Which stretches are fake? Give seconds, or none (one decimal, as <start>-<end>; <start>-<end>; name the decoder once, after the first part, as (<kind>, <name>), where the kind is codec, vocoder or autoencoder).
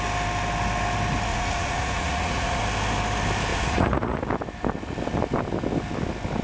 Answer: 1.3-2.6 (vocoder, Vocos); 3.5-4.2